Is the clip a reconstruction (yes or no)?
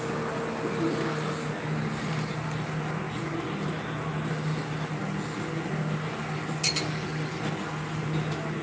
no